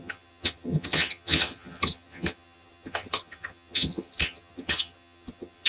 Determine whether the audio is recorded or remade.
remade